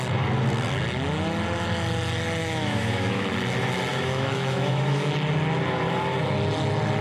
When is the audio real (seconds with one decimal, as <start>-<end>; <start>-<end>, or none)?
0.0-2.4; 3.3-3.9; 5.1-7.0